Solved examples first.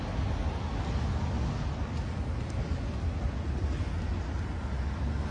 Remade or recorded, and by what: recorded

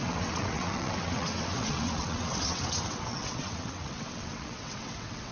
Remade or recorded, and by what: remade, vocoder, WaveNeXt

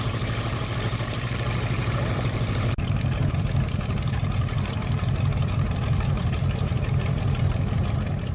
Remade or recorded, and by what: remade, vocoder, BigVGAN v2